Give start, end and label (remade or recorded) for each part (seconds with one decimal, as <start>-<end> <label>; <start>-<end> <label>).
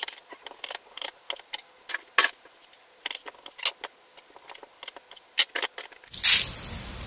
0.0-7.1 recorded